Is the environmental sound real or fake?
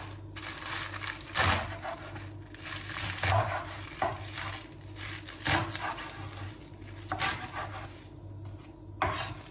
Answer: real